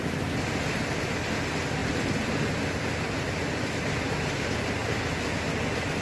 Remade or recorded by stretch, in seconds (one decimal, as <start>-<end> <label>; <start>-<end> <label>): 0.0-6.0 recorded